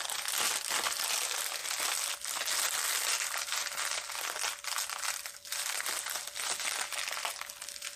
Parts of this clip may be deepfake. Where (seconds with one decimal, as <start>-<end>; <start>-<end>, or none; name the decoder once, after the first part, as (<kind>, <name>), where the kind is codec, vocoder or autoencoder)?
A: none